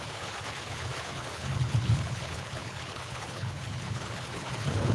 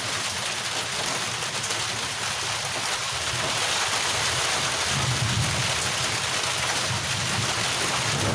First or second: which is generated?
first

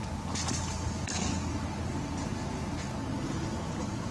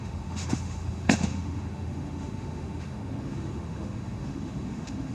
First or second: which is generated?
second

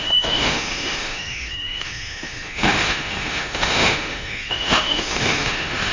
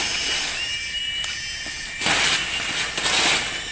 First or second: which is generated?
first